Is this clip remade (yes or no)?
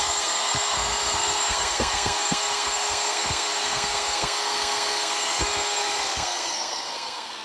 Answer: yes